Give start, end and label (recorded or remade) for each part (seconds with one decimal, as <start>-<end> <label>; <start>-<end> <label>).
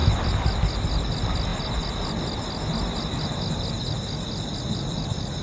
0.0-5.4 recorded